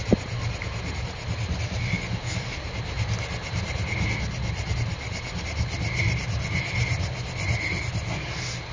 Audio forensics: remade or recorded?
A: recorded